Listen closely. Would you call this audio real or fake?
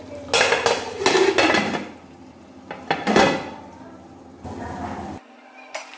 real